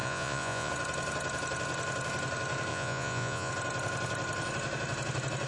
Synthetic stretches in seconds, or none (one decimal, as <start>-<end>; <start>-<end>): 0.0-0.7; 2.7-3.5